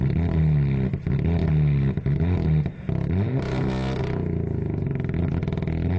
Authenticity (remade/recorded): recorded